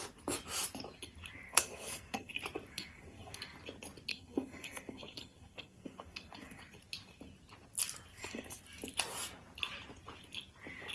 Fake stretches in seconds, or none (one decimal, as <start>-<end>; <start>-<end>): 1.5-2.3; 2.7-3.4; 4.1-6.6; 8.1-8.6